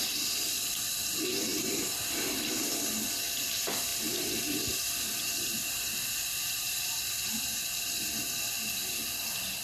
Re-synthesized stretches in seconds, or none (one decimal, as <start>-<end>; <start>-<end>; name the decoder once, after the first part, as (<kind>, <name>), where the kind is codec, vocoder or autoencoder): none

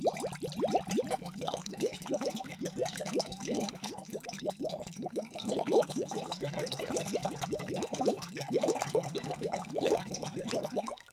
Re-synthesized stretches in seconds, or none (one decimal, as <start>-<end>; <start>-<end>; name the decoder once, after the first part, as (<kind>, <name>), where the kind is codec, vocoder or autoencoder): 1.1-11.1 (codec, SNAC)